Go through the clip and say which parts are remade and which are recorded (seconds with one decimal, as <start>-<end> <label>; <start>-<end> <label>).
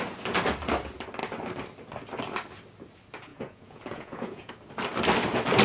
0.0-3.3 recorded; 3.3-4.5 remade; 4.5-5.6 recorded